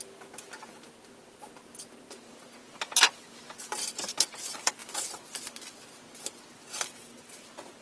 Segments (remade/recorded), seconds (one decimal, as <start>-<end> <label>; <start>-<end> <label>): 0.0-7.8 recorded